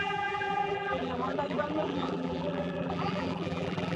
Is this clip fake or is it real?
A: fake